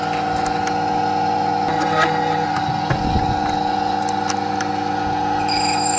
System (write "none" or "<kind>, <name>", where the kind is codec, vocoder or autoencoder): none